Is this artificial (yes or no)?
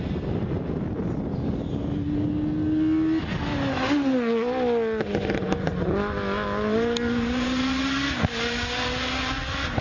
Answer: no